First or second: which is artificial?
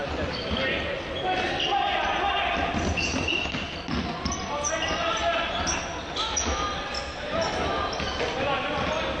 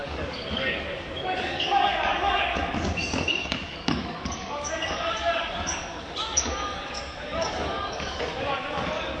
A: second